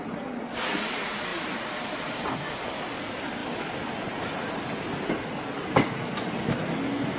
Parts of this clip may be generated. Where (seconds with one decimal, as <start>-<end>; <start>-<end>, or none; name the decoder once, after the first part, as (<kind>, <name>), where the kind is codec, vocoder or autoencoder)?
none